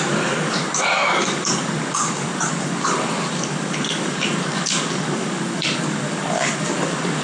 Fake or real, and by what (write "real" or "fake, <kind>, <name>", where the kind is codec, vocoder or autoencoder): fake, codec, DAC